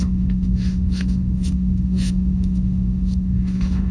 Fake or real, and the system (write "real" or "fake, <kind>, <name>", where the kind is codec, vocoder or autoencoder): fake, autoencoder, DAC-VAE